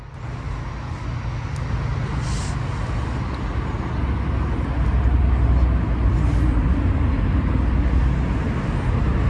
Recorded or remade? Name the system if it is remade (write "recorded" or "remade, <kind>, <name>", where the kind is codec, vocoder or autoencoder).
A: recorded